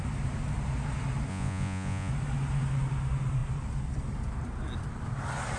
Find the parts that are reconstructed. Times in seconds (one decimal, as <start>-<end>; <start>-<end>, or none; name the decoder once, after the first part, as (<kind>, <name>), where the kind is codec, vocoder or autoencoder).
1.3-2.1 (vocoder, Vocos)